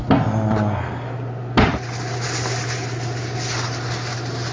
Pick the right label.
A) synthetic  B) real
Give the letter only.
B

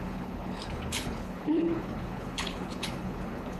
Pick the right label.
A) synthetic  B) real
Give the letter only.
A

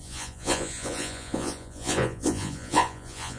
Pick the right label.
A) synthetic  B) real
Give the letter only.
A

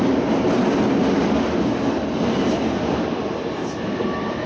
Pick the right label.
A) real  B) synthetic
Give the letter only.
A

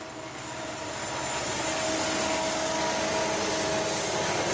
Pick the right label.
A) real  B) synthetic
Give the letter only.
A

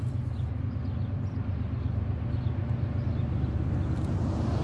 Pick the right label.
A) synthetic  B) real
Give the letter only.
B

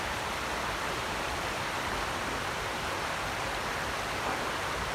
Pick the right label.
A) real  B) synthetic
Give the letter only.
B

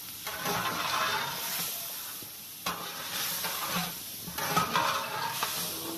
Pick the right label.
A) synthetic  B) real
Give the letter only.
B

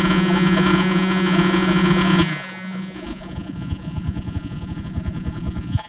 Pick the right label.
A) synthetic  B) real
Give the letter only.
A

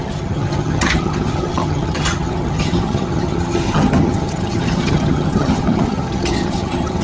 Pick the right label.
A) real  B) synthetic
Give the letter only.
B